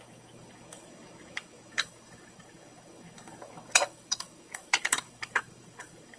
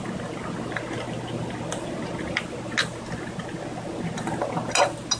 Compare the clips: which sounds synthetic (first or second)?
first